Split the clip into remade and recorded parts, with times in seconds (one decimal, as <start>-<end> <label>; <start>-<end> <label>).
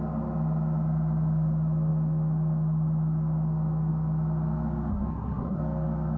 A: 0.0-4.9 recorded; 4.9-5.6 remade; 5.6-6.2 recorded